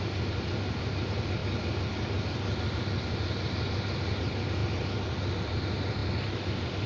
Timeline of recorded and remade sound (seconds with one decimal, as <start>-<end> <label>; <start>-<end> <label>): 0.0-6.9 recorded